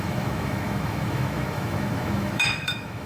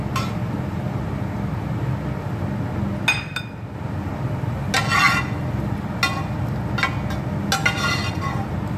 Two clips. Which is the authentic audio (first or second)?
second